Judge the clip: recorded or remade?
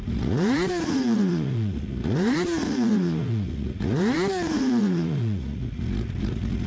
remade